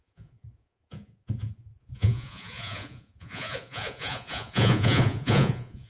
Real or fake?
fake